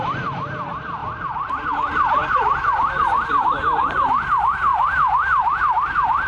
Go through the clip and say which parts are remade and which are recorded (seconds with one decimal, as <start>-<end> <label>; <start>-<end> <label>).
0.0-1.0 recorded; 1.0-1.7 remade; 1.7-2.2 recorded; 2.2-3.9 remade; 3.9-4.7 recorded; 4.7-5.6 remade; 5.6-6.3 recorded